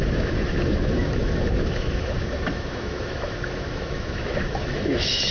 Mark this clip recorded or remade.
remade